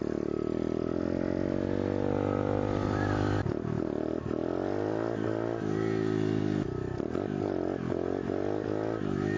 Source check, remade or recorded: recorded